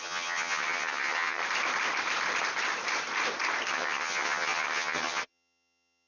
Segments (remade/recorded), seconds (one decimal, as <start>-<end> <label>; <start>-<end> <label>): 0.0-1.4 remade; 1.4-3.7 recorded; 3.7-6.1 remade